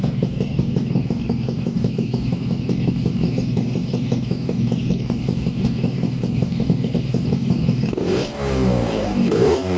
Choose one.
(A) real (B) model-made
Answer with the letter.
B